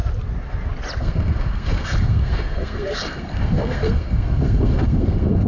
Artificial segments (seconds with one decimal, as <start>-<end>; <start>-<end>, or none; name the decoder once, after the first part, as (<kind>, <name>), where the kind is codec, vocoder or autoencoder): 1.0-5.5 (codec, SNAC)

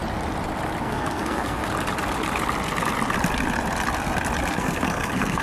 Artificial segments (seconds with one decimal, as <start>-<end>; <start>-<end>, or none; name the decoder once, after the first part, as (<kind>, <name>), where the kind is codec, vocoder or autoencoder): 0.8-1.6 (codec, SNAC); 4.5-5.4

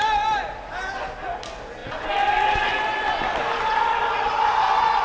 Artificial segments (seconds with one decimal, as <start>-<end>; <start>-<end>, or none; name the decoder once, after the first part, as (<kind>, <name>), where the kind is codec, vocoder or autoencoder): none

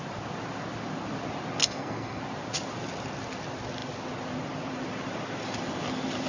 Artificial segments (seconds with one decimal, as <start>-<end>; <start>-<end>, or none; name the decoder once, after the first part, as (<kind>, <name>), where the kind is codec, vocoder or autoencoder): 1.6-2.2 (codec, SNAC)